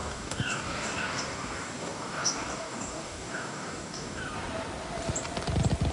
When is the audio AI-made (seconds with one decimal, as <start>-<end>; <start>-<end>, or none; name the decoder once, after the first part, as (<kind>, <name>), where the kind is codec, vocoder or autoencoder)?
0.0-4.2 (codec, DAC)